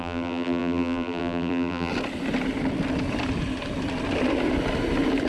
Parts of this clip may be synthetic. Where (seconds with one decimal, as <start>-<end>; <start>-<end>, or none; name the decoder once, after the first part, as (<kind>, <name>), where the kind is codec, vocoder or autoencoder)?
0.0-1.9 (vocoder, BigVGAN v2)

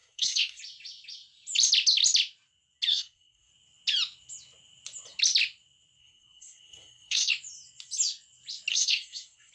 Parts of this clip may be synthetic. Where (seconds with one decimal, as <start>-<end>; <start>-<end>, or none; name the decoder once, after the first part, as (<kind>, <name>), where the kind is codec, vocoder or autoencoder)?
0.0-0.6 (codec, SNAC); 2.9-3.5; 6.0-7.3; 8.7-9.5

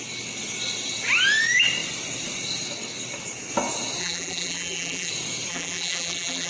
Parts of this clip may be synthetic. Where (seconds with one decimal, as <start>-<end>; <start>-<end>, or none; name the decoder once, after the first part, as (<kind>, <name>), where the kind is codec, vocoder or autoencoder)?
4.0-5.1 (vocoder, BigVGAN v2); 5.5-6.5

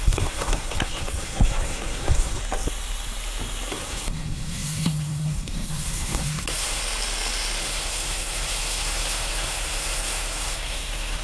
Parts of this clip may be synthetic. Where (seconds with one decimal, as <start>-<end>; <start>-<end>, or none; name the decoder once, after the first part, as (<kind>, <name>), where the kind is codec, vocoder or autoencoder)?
0.0-2.4 (codec, SNAC); 3.7-6.8; 7.6-11.2

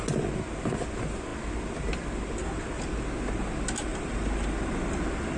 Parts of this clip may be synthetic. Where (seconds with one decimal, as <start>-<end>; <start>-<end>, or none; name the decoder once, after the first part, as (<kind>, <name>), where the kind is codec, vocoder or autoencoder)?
3.9-5.0 (vocoder, BigVGAN v2)

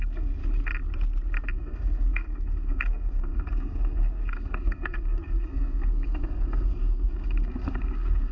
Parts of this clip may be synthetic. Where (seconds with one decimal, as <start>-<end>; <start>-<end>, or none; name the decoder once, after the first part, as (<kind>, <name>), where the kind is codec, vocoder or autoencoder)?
0.0-0.4 (codec, SNAC); 1.5-8.3

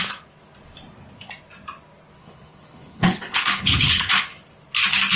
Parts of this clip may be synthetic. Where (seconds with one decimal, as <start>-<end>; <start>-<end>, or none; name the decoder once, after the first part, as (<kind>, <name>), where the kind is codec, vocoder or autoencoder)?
2.2-4.2 (codec, HILCodec)